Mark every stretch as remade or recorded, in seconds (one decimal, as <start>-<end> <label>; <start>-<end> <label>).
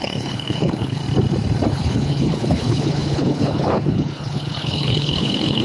0.0-1.0 remade; 1.0-1.7 recorded; 1.7-5.6 remade